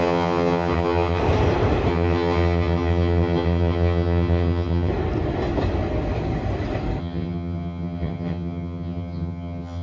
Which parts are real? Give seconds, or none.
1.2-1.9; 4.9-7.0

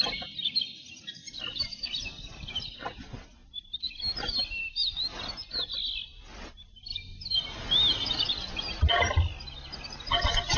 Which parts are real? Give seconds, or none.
0.0-1.2; 1.8-3.4; 4.0-10.6

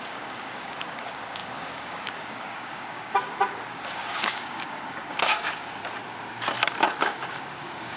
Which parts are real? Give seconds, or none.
5.8-7.0

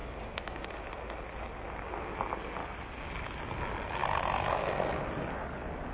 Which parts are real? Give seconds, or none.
0.7-5.9

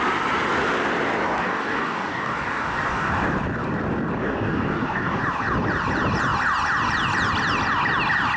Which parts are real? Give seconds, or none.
0.0-1.4; 3.1-4.2; 5.2-8.4

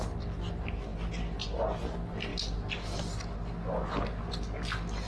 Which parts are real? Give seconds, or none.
0.0-5.1

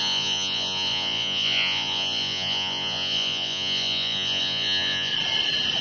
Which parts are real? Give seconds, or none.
5.1-5.8